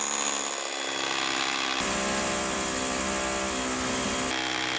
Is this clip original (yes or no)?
yes